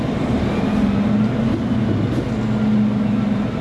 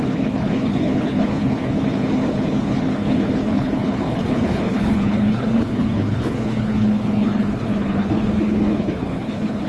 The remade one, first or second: second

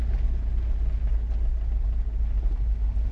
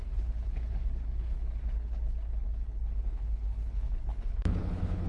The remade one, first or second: second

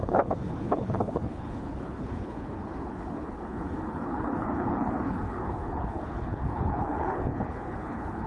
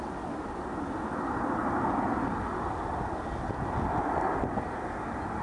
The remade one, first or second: first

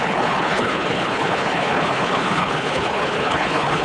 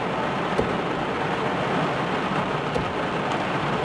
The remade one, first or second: first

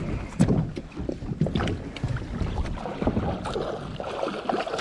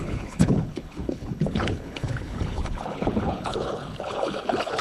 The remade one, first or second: second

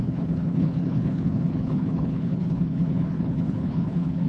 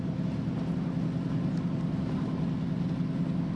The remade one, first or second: first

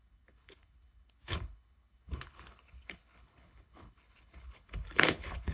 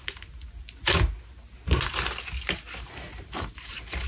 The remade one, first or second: first